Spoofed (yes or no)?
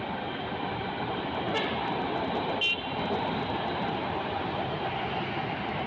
no